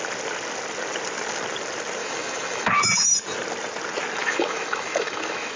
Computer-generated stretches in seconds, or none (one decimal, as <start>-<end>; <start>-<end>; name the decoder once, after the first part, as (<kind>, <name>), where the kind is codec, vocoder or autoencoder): 2.0-3.2 (autoencoder, DAC-VAE); 4.2-5.6